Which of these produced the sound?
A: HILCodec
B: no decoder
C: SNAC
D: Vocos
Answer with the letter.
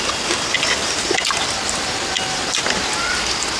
B